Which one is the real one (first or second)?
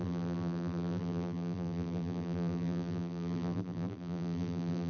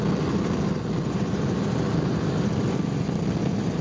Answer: second